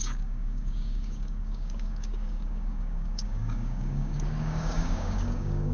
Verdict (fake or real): fake